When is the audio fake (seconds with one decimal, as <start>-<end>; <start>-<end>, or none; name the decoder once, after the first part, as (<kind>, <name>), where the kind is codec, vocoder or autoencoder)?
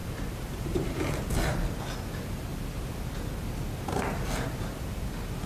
0.0-1.2 (vocoder, BigVGAN v2)